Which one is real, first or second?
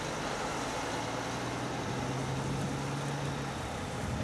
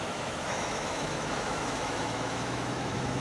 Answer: first